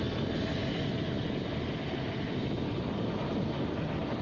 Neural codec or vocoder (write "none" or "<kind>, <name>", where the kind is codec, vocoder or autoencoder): none